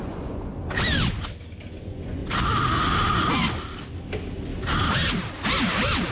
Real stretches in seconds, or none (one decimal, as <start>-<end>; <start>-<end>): 0.5-1.8; 2.2-6.1